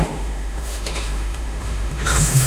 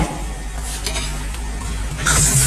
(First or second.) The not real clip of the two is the first